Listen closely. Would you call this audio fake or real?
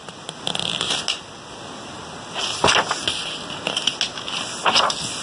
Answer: real